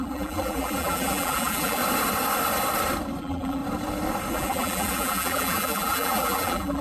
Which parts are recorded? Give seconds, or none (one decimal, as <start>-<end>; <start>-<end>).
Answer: 1.8-3.2; 3.6-4.3